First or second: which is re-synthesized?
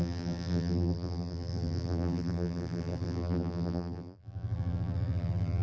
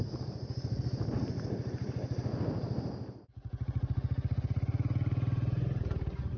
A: first